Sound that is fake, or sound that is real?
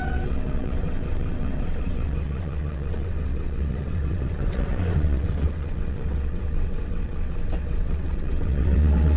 fake